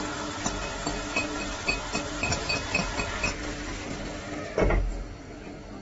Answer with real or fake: real